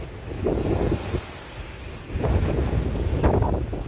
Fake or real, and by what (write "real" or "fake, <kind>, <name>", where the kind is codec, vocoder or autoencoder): real